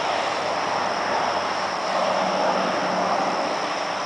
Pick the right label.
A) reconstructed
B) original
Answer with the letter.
B